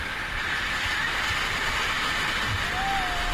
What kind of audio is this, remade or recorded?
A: recorded